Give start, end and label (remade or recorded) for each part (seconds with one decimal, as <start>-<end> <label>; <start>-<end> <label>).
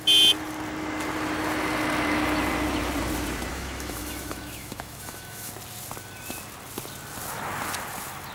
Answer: 0.0-3.5 recorded; 3.5-5.5 remade; 5.5-8.3 recorded